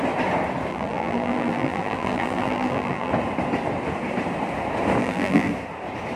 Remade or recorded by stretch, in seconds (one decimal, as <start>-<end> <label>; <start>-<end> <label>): 0.0-0.7 recorded; 0.7-3.1 remade; 3.1-5.0 recorded; 5.0-5.5 remade; 5.5-6.2 recorded